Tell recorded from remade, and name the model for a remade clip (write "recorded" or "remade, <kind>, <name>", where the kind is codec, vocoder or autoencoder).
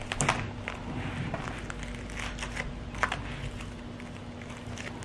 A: recorded